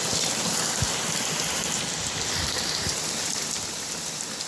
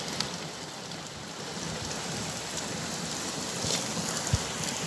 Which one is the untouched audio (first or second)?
first